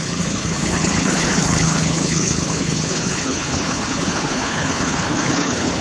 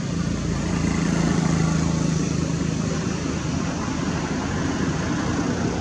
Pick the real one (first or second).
second